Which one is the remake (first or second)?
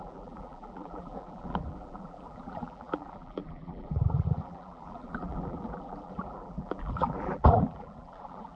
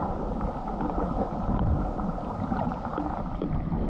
first